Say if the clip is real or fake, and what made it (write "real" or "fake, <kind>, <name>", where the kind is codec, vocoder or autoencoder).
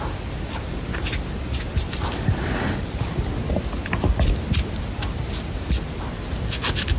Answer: real